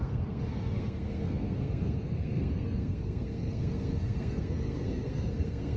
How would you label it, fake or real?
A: fake